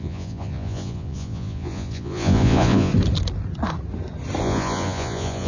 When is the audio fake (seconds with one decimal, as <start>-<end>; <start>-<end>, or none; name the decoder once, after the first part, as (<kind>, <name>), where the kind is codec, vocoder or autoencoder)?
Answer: 0.0-2.9 (vocoder, Vocos); 4.4-5.5